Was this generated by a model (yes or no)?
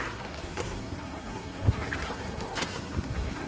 yes